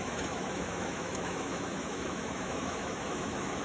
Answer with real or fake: fake